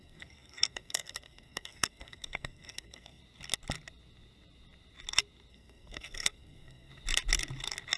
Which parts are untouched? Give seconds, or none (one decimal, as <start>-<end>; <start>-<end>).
3.2-5.5; 6.9-8.0